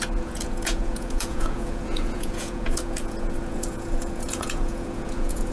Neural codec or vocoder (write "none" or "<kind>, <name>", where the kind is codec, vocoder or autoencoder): vocoder, Vocos